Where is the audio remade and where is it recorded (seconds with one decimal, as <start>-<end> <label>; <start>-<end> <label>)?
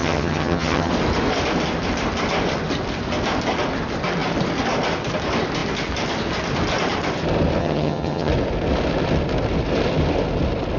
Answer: 0.0-0.9 remade; 0.9-7.6 recorded; 7.6-8.3 remade; 8.3-10.8 recorded